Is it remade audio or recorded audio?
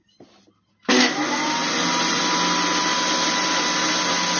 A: recorded